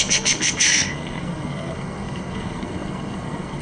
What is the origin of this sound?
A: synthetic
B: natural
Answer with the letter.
A